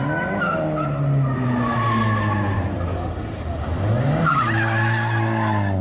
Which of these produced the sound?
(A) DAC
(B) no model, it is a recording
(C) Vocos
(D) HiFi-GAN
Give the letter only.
B